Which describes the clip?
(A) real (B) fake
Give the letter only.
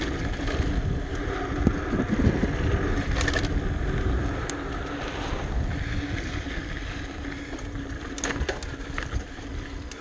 A